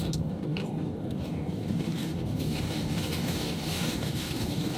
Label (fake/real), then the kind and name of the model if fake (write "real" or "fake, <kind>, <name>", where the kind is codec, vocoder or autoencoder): fake, codec, DAC